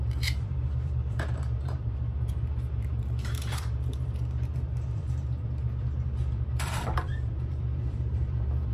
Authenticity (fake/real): fake